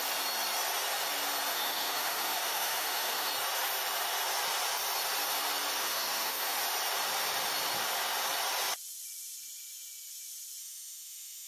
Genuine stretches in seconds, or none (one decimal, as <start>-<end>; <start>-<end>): 0.0-1.5; 3.3-5.8; 6.6-10.6